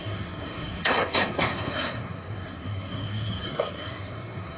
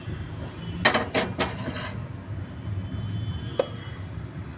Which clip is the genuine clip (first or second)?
second